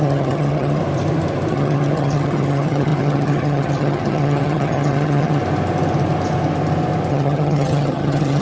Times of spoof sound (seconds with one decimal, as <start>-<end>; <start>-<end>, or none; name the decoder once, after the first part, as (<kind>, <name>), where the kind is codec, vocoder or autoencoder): 0.0-0.8 (vocoder, HiFi-GAN); 1.5-5.4; 7.1-8.4